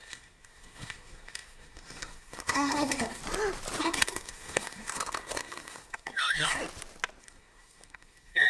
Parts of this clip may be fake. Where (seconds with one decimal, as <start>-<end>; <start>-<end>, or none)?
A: 0.0-3.2; 3.8-6.6; 7.2-8.5